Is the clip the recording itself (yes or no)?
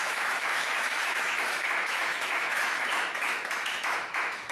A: no